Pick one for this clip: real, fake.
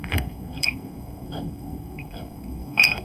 fake